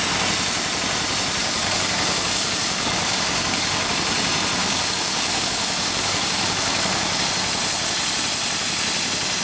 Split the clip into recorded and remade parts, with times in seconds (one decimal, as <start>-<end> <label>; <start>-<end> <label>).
0.0-1.4 recorded; 1.4-3.9 remade; 3.9-4.6 recorded; 4.6-7.2 remade; 7.2-9.4 recorded